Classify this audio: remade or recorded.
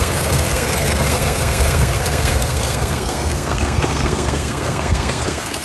remade